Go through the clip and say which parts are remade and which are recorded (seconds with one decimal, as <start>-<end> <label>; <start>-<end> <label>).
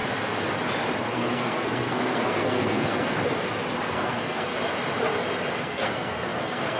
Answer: 0.0-1.0 recorded; 1.0-3.2 remade; 3.2-3.8 recorded; 3.8-4.5 remade; 4.5-5.5 recorded; 5.5-6.8 remade